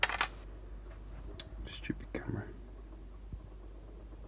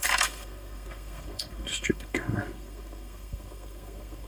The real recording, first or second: first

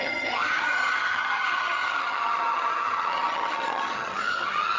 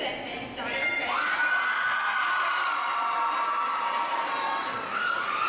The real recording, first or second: second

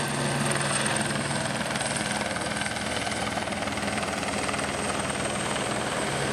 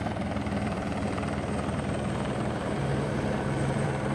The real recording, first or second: first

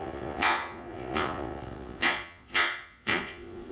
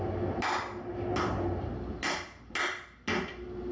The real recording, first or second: second